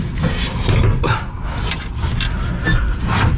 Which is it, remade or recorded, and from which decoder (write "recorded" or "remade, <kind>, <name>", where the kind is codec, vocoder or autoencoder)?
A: recorded